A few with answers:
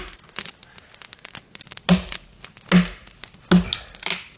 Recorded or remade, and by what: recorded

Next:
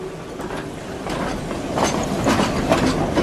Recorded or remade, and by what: recorded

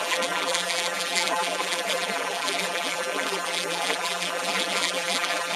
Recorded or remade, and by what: remade, vocoder, BigVGAN v2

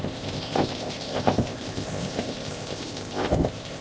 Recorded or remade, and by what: remade, codec, ZipCodec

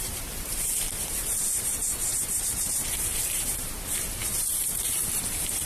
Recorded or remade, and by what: remade, vocoder, BigVGAN v2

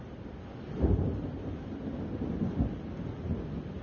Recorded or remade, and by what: recorded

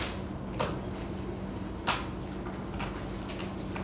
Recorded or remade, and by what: recorded